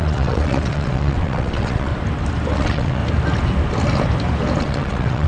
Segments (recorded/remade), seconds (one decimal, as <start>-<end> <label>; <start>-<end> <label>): 0.0-1.9 remade; 1.9-2.5 recorded; 2.5-3.0 remade; 3.0-4.6 recorded; 4.6-5.3 remade